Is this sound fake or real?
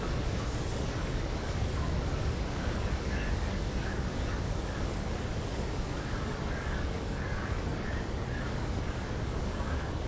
fake